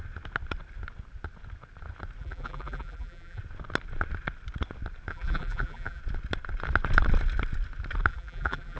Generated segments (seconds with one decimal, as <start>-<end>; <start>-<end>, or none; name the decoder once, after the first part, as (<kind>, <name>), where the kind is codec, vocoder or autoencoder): 2.2-3.4 (vocoder, BigVGAN v2); 5.1-6.0; 8.1-8.8